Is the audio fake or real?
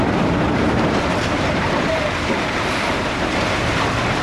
fake